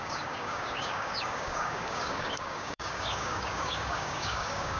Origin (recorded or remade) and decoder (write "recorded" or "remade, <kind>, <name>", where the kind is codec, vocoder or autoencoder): remade, codec, DAC